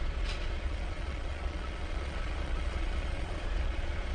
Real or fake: fake